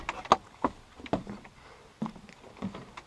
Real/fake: real